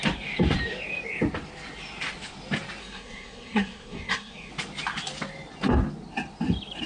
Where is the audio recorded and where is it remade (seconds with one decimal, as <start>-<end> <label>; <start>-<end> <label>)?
0.0-2.8 recorded; 2.8-4.5 remade; 4.5-6.9 recorded